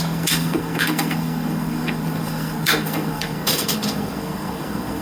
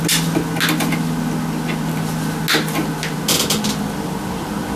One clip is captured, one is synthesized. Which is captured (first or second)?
second